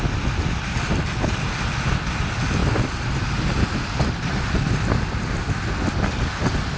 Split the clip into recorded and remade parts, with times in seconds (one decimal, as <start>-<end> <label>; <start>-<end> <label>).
0.0-2.6 recorded; 2.6-3.7 remade; 3.7-6.8 recorded